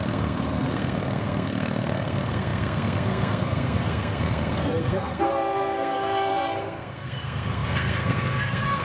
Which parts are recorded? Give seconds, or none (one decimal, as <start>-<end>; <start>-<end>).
none